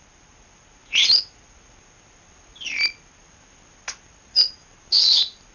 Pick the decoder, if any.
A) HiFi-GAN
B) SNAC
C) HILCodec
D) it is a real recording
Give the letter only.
D